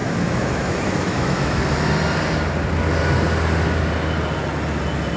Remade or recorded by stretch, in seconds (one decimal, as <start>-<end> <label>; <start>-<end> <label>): 0.0-1.6 remade; 1.6-5.2 recorded